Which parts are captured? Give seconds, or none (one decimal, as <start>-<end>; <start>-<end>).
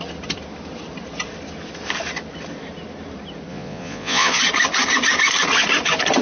0.0-3.5; 4.4-6.2